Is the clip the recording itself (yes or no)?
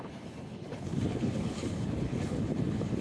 no